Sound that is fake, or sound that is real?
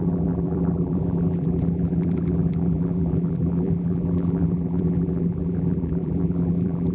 fake